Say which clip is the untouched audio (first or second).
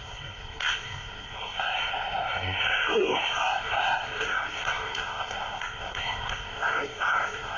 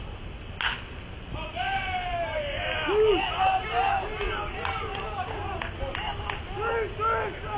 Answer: second